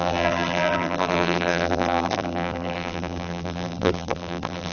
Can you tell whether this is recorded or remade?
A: remade